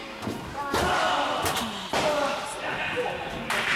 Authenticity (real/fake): real